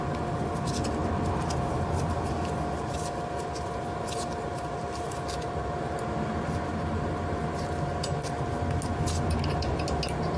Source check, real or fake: real